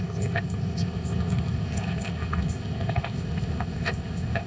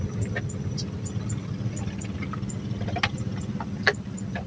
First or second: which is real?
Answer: second